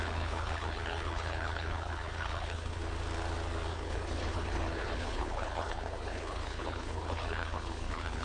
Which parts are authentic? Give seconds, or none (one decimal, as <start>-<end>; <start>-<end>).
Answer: 2.8-3.7